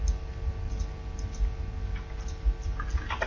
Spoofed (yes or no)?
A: no